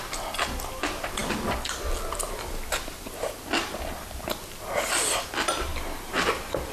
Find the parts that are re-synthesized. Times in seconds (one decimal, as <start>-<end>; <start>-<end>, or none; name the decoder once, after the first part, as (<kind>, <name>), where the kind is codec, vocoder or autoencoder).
none